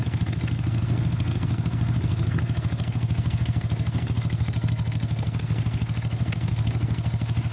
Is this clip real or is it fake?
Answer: fake